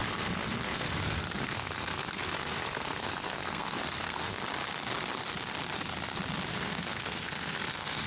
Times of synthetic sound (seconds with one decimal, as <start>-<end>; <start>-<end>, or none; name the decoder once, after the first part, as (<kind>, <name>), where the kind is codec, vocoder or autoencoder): 0.0-4.4 (codec, SNAC); 6.5-8.1